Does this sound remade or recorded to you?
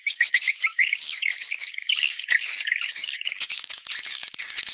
remade